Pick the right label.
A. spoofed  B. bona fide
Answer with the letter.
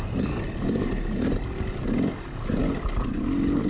B